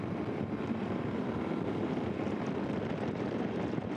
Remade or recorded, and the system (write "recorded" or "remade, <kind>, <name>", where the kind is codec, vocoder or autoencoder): remade, vocoder, BigVGAN v2